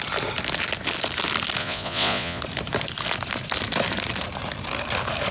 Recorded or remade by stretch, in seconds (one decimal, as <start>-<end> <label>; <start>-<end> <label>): 0.0-1.6 recorded; 1.6-2.4 remade; 2.4-5.3 recorded